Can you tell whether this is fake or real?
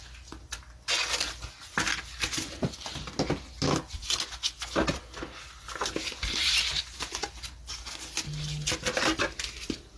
real